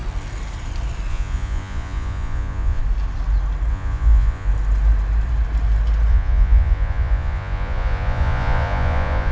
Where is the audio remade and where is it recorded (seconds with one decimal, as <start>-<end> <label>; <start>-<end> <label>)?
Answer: 0.0-1.1 recorded; 1.1-2.8 remade; 2.8-3.7 recorded; 3.7-4.5 remade; 4.5-6.1 recorded; 6.1-9.3 remade